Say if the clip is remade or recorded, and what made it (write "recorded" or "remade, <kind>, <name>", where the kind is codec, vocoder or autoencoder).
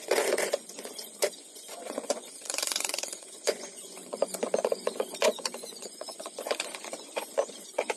remade, vocoder, Vocos